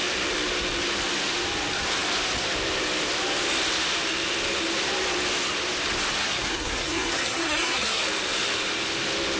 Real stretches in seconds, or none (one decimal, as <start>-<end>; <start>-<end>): 0.0-6.2; 8.0-9.4